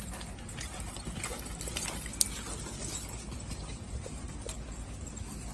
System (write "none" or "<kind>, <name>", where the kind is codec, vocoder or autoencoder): none